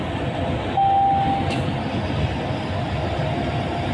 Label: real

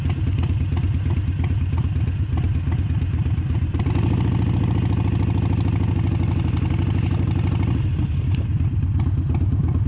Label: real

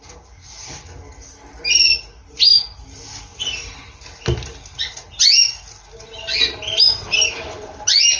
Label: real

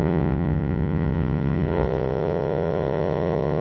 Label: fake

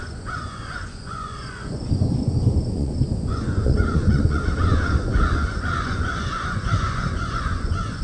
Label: fake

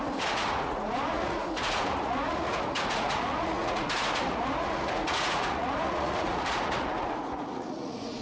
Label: fake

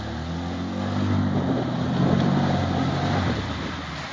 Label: real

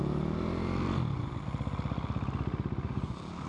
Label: real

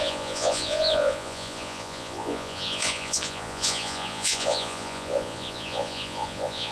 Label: fake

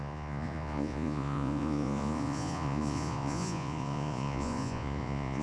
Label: fake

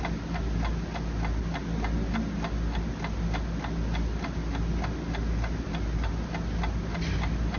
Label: real